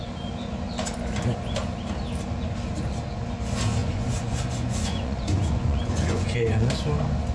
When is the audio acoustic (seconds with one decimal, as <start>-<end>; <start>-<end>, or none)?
0.0-3.8; 6.7-7.3